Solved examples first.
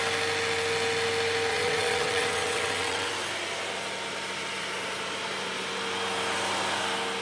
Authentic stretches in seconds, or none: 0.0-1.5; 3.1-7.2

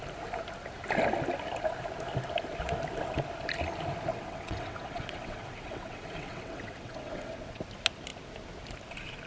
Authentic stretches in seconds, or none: 0.0-4.1; 7.6-9.3

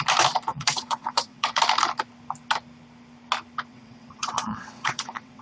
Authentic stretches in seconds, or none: 0.0-0.5; 1.6-3.7

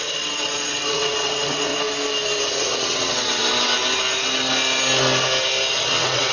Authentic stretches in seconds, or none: 1.7-2.5; 3.4-5.8

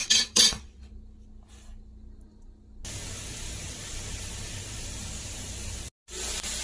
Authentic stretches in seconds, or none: 0.9-6.6

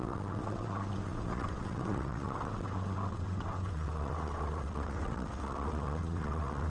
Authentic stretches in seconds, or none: none